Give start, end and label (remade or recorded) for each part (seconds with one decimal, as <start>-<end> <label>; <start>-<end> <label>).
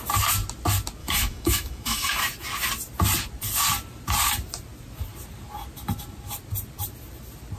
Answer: 0.0-1.0 recorded; 1.0-2.2 remade; 2.2-7.6 recorded